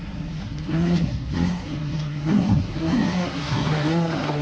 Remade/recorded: remade